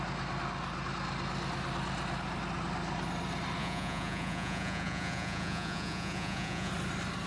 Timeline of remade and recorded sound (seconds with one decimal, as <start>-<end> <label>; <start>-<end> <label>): 0.0-3.6 recorded; 3.6-6.7 remade; 6.7-7.3 recorded